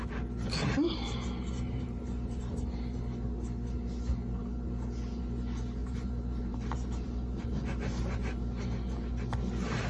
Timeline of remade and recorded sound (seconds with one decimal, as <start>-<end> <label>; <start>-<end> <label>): 0.0-0.6 recorded; 0.6-3.0 remade; 3.0-5.8 recorded; 5.8-7.5 remade; 7.5-9.9 recorded